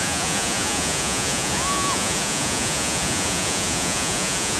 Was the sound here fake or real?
fake